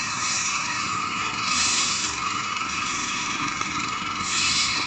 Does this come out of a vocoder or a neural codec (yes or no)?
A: yes